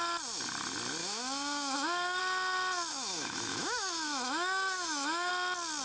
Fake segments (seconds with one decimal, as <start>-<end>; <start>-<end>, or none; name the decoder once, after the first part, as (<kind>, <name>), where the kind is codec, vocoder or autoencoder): 1.0-2.2 (autoencoder, DAC-VAE); 2.9-5.3